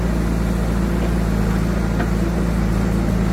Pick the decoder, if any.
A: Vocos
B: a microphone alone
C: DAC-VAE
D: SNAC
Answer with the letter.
B